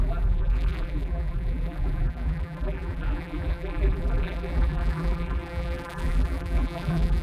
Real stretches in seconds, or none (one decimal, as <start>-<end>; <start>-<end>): none

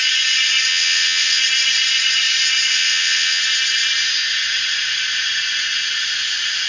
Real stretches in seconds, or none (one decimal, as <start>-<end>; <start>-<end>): 0.0-0.7; 1.4-2.7; 3.4-6.7

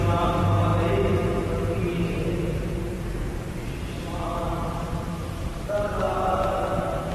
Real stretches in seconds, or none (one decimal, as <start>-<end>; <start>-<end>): none